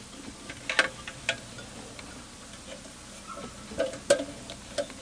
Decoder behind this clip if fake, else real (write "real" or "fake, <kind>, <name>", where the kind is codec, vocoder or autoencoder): real